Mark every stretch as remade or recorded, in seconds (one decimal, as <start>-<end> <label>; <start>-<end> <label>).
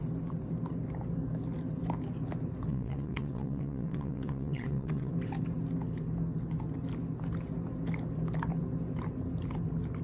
0.0-2.7 recorded; 2.7-5.1 remade; 5.1-10.0 recorded